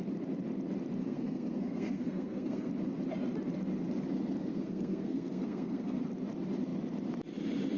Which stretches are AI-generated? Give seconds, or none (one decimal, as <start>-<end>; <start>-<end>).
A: 1.0-2.7; 4.5-6.0

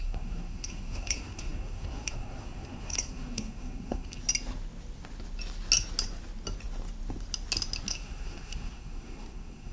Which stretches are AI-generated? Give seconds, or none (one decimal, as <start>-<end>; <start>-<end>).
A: 0.0-4.2; 7.9-9.7

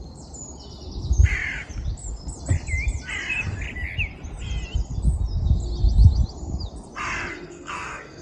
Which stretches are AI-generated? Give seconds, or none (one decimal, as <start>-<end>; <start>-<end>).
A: 7.3-8.2

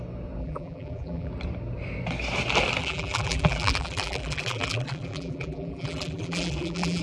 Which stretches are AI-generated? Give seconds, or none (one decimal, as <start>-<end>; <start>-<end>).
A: 0.4-1.3; 2.8-7.0

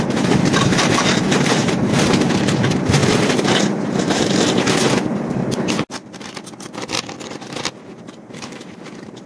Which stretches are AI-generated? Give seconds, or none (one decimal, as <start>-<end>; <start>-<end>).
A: 0.0-3.0; 8.0-9.3

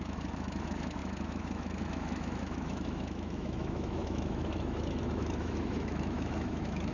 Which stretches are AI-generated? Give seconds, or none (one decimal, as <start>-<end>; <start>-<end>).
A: 0.0-6.9

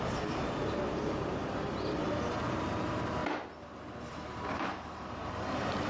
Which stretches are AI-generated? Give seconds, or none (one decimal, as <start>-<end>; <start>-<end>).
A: 0.0-1.4; 2.4-3.2; 4.1-5.9